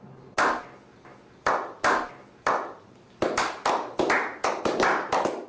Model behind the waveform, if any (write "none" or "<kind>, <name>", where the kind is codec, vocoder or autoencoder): none